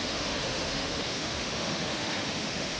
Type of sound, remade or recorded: remade